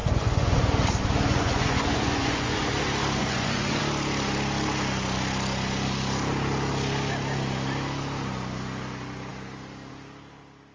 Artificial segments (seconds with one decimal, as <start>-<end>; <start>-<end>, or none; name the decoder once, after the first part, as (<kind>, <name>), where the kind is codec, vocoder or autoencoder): 0.0-0.6 (vocoder, Vocos); 1.3-2.7; 3.2-3.8